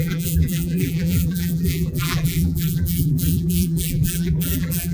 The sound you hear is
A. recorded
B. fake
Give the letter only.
B